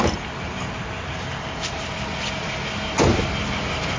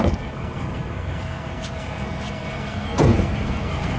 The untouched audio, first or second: first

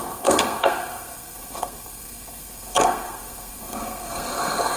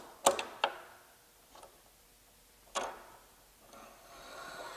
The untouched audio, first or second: second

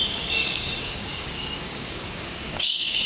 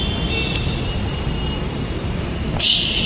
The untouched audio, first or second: second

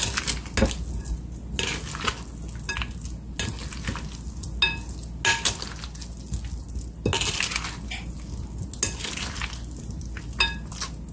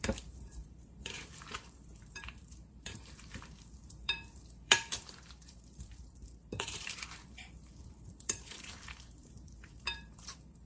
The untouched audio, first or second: first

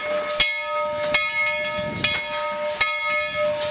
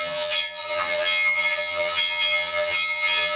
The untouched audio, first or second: first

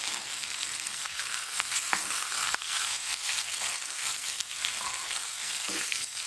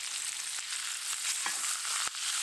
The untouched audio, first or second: second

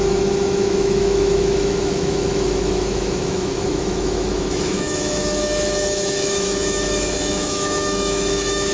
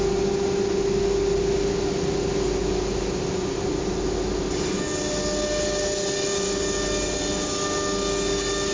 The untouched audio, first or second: second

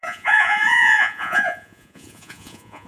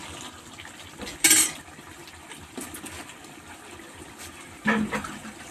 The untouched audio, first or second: second